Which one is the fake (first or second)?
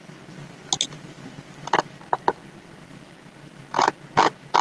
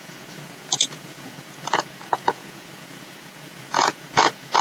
second